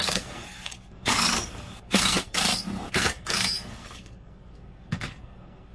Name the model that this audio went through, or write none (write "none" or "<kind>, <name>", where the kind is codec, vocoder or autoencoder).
codec, SNAC